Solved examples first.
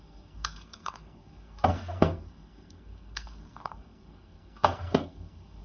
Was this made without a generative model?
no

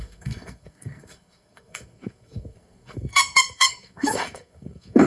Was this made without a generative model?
no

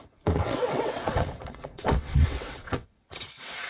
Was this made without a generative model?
no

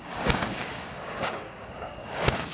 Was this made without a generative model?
no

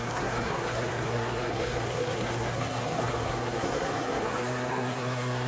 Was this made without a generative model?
no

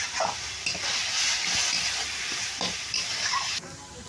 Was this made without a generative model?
yes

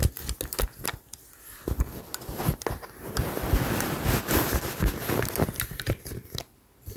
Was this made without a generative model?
yes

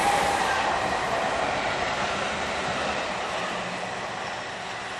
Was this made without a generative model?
yes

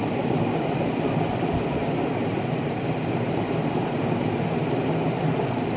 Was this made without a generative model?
yes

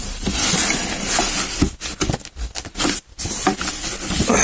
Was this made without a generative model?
yes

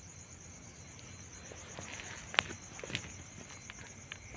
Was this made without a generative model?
yes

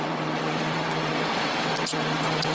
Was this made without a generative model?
no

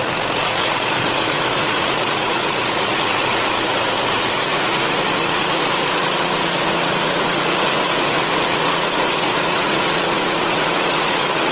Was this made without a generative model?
no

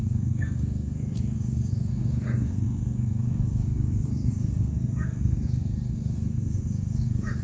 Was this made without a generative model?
no